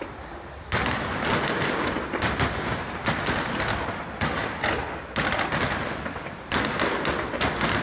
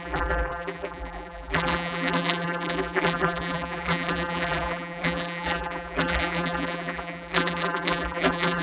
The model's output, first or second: second